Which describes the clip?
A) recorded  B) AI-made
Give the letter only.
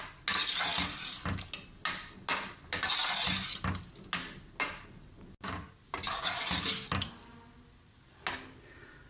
A